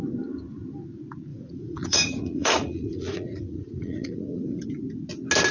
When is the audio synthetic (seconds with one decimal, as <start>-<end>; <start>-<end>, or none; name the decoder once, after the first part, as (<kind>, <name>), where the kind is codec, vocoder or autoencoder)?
1.3-4.6 (vocoder, Vocos)